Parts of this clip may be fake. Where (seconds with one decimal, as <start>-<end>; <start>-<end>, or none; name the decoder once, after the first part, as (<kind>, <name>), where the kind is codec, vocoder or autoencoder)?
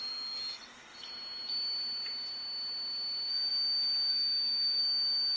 4.1-4.8 (codec, DAC)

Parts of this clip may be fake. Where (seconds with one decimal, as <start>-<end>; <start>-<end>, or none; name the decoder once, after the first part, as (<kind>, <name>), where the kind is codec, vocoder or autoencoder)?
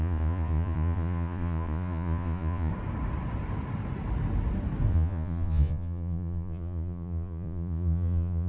0.0-2.7 (vocoder, Vocos); 4.9-8.5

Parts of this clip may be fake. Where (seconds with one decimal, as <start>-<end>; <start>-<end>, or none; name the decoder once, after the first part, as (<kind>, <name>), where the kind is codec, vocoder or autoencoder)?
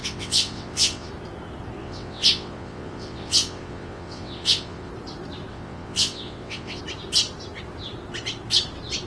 0.0-1.1 (vocoder, WaveNeXt); 1.8-4.9; 5.5-6.8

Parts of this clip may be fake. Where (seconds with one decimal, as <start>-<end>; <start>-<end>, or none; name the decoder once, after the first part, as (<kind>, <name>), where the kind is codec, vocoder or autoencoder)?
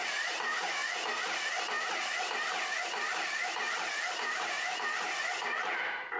none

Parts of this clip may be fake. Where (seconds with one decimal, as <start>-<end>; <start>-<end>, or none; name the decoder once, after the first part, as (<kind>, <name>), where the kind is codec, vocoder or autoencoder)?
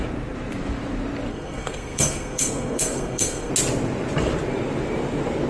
1.3-3.5 (codec, SNAC)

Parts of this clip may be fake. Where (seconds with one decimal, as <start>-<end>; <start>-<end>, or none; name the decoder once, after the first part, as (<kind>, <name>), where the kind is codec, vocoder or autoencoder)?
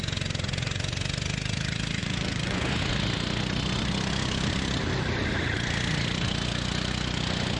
2.0-2.8 (vocoder, Vocos)